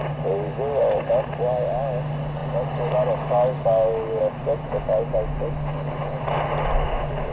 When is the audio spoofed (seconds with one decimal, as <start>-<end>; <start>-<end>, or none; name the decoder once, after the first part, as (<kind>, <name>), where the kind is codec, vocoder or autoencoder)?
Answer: none